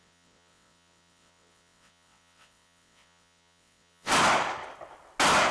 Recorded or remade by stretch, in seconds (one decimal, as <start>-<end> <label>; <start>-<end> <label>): 0.0-4.1 remade; 4.1-5.5 recorded